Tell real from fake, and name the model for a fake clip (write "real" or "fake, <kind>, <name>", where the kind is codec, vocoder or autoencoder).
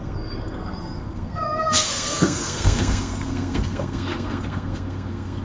fake, codec, SNAC